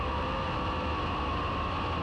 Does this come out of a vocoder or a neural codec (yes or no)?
no